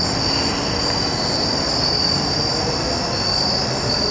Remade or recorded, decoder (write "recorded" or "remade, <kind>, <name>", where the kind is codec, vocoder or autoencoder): recorded